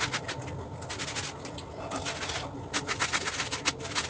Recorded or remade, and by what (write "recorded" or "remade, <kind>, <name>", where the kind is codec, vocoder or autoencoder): recorded